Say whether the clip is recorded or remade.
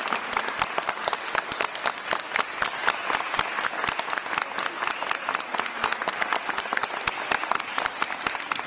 recorded